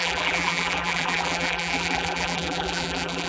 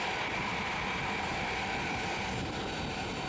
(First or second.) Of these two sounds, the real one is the second